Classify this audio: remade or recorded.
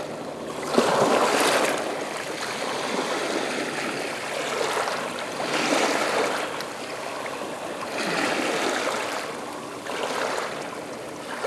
recorded